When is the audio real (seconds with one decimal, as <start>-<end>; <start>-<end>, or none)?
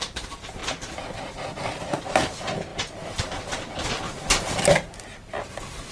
0.0-5.9